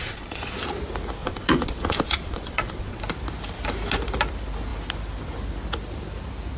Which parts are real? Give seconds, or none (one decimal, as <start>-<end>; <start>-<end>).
0.6-1.2; 3.0-6.6